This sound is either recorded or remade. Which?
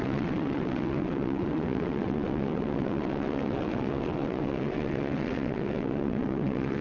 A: remade